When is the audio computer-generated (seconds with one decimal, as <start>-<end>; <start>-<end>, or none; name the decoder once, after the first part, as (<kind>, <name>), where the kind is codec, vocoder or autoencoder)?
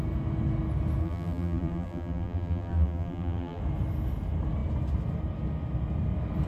1.0-3.6 (vocoder, BigVGAN v2)